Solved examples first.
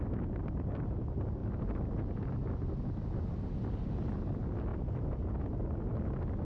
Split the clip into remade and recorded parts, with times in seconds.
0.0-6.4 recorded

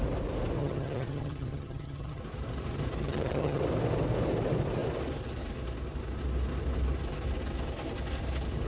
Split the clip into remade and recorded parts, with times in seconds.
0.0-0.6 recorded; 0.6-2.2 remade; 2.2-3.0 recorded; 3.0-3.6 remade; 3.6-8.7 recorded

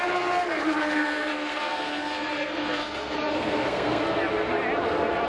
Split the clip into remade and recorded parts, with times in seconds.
0.0-0.8 recorded; 0.8-4.0 remade; 4.0-5.3 recorded